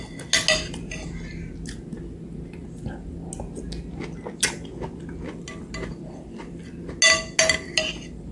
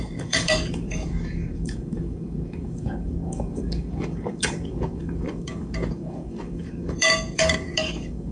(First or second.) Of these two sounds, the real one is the first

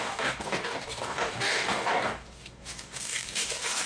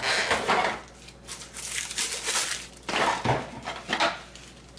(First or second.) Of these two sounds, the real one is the second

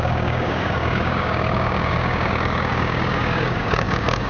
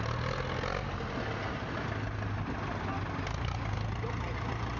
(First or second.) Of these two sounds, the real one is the second